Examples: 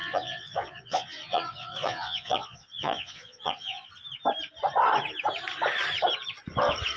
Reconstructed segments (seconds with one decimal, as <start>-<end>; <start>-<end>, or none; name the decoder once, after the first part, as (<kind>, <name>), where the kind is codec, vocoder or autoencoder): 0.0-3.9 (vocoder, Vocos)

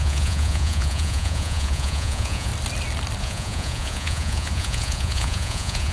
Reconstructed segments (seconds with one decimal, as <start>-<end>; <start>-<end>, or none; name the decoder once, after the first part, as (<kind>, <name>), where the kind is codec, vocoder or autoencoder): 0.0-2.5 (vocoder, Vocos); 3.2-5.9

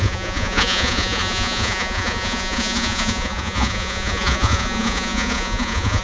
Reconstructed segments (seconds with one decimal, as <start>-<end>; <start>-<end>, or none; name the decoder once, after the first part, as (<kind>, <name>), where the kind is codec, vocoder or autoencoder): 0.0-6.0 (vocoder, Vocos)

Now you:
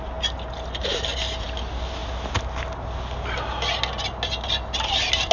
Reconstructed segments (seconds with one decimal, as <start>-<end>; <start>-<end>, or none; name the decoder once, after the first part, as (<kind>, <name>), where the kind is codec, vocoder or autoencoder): none